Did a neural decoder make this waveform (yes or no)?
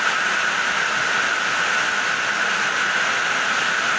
no